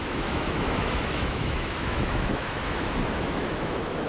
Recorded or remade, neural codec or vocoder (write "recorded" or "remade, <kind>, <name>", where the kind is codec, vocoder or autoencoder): remade, autoencoder, DAC-VAE